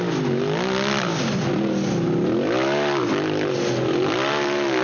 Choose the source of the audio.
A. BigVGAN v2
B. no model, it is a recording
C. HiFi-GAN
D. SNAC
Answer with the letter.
B